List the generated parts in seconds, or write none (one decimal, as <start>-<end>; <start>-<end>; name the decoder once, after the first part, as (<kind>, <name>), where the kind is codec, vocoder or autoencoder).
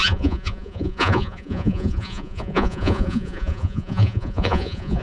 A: 0.0-5.0 (vocoder, Vocos)